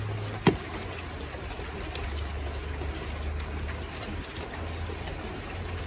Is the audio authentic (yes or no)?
yes